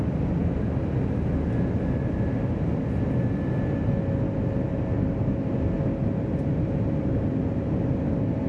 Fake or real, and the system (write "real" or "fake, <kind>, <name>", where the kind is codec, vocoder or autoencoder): real